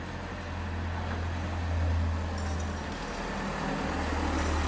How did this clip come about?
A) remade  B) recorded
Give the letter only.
B